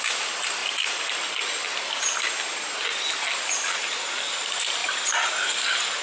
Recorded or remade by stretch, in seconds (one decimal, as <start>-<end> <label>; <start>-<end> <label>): 0.0-6.0 recorded